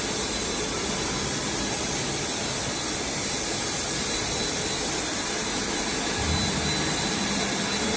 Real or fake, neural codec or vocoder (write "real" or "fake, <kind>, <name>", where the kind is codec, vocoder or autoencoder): real